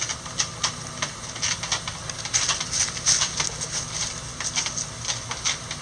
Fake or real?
real